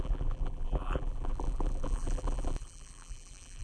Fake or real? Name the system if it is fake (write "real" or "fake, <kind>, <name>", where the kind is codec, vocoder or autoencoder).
fake, vocoder, BigVGAN v2